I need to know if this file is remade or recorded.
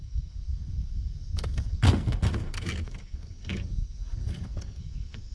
remade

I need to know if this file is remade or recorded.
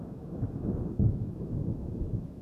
remade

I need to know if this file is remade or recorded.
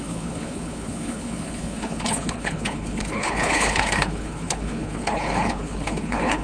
remade